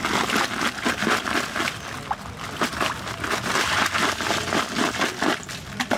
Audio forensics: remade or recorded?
recorded